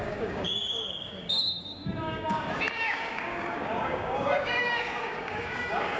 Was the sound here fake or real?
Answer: fake